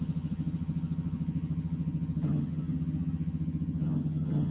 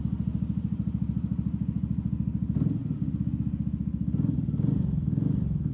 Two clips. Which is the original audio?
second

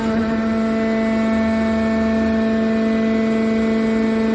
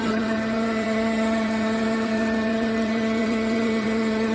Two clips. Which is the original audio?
first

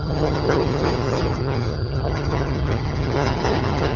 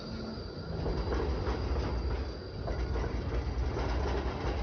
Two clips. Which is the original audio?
second